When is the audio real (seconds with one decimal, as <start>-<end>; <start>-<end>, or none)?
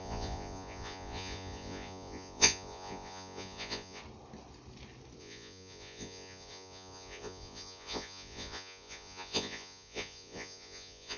4.0-5.2